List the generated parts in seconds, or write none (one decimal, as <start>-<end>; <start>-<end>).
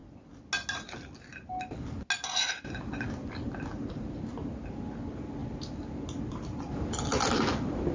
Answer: none